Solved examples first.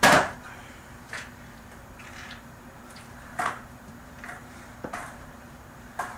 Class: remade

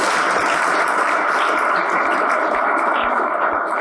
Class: recorded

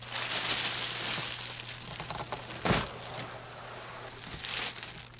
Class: recorded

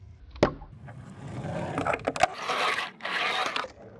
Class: recorded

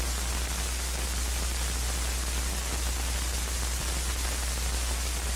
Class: recorded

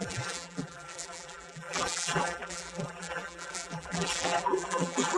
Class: remade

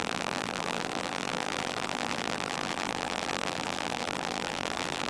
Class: remade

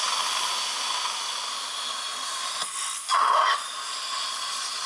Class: recorded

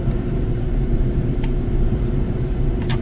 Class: remade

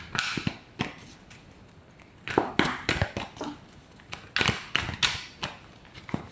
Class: recorded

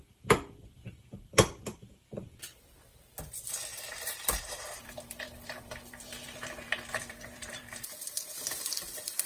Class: remade